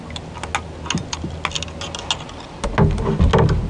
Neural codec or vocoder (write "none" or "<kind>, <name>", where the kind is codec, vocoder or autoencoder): none